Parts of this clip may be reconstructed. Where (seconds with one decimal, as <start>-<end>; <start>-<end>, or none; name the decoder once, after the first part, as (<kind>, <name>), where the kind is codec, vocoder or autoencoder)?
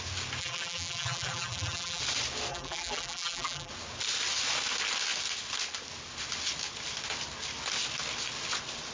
0.4-2.0 (vocoder, BigVGAN v2); 2.5-3.7